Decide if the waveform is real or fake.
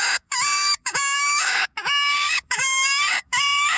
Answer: fake